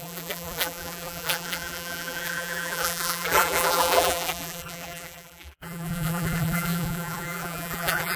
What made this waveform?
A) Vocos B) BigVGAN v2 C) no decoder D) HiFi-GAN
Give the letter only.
B